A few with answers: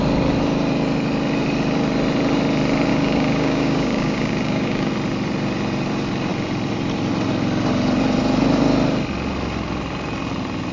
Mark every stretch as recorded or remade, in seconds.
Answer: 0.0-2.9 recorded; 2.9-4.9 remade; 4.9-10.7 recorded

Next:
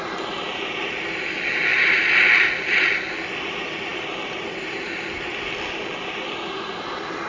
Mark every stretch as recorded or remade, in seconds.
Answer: 0.0-7.3 recorded

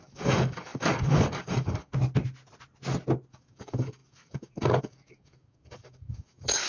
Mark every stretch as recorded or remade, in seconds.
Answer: 0.0-1.9 remade; 1.9-3.3 recorded; 3.3-6.7 remade

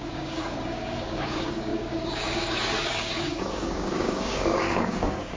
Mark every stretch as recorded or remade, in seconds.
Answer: 0.0-5.4 remade

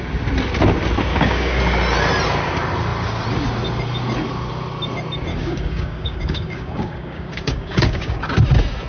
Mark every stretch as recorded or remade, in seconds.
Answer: 0.0-1.1 recorded; 1.1-1.6 remade; 1.6-5.3 recorded; 5.3-8.3 remade; 8.3-8.9 recorded

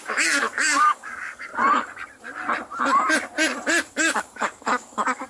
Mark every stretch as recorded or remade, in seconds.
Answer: 0.0-1.5 remade; 1.5-3.9 recorded; 3.9-5.3 remade

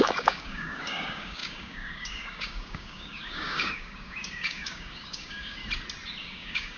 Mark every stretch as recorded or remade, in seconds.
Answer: 0.0-5.6 remade; 5.6-6.2 recorded; 6.2-6.8 remade